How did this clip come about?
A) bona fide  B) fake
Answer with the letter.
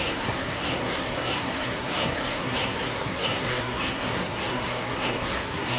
B